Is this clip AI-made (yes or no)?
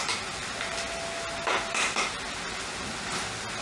no